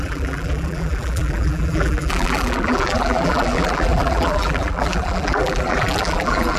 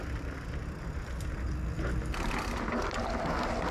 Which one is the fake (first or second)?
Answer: first